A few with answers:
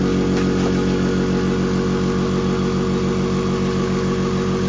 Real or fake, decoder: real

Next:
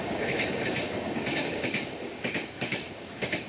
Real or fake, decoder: fake, codec, DAC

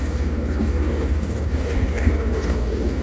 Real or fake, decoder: fake, codec, DAC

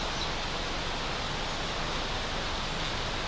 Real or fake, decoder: real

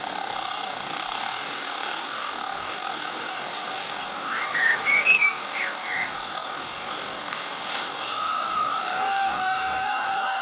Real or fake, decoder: fake, codec, DAC